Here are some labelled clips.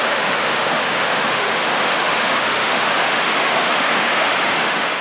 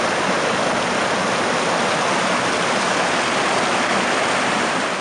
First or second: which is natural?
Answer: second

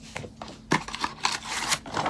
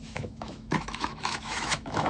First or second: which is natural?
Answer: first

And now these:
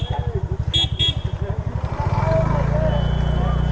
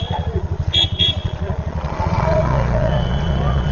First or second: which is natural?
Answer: first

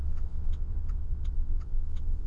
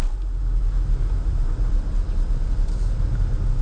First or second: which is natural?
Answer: second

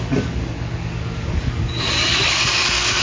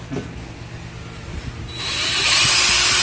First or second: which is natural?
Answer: second